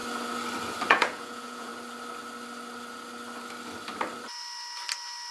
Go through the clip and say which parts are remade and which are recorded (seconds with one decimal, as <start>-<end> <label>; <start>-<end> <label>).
0.0-0.9 recorded; 0.9-1.7 remade; 1.7-5.3 recorded